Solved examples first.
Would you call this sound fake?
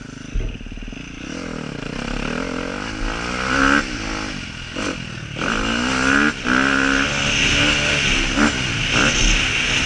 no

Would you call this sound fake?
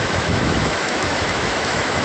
yes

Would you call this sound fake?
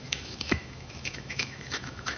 yes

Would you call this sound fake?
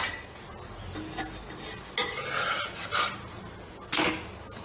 no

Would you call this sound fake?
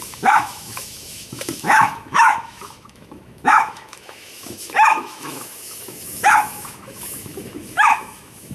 yes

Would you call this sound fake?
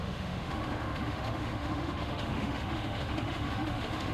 yes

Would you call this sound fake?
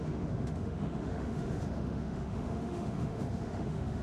yes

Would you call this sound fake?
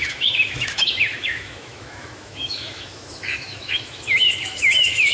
yes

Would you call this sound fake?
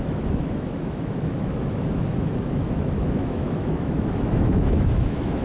yes